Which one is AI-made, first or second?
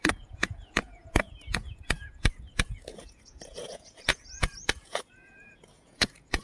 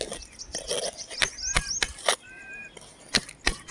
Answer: first